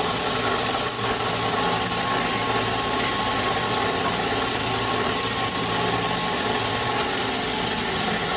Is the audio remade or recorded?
recorded